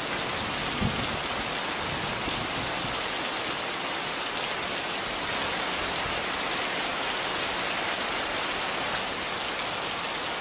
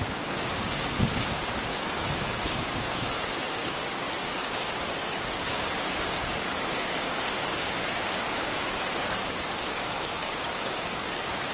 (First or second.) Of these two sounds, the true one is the first